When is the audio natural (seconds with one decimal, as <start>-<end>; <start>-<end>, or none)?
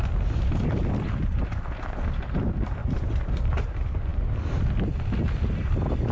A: 0.0-2.8; 3.3-6.1